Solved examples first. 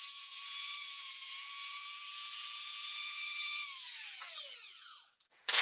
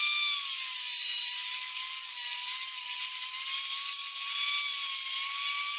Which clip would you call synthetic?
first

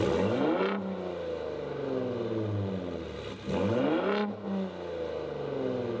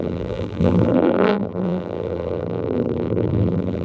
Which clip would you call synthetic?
second